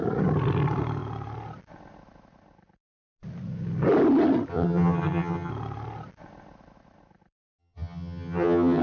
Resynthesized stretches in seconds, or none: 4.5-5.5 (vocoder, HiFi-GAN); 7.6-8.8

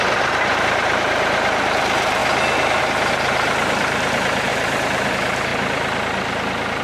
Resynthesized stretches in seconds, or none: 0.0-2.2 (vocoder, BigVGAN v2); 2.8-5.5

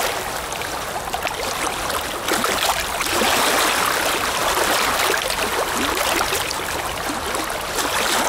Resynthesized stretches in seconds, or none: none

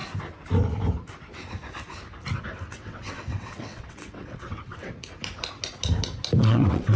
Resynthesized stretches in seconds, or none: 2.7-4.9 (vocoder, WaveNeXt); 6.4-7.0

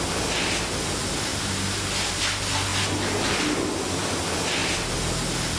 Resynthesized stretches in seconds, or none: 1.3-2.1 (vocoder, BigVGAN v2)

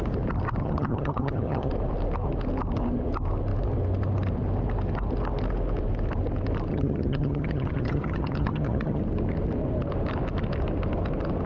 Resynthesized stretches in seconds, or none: 0.6-1.7 (vocoder, HiFi-GAN); 6.7-9.0

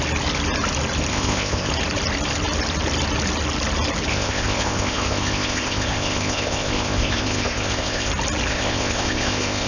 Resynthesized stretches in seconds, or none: 1.1-1.7 (codec, ZipCodec); 4.1-8.1; 8.5-9.7